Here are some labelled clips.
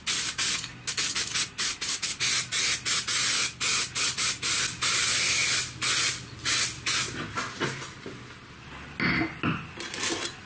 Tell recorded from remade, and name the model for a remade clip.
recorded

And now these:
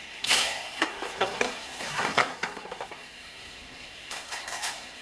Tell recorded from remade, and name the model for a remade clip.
remade, codec, SNAC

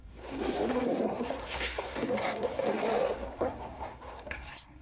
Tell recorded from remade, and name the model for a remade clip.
remade, codec, SNAC